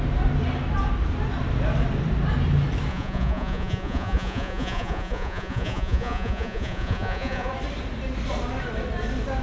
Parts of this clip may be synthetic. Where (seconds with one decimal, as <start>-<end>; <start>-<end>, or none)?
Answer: 2.9-7.5